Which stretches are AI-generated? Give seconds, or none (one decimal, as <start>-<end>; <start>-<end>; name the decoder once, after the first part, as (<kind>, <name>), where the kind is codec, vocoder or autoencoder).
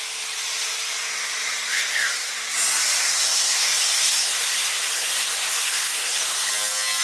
1.7-2.3 (codec, SNAC); 3.0-6.5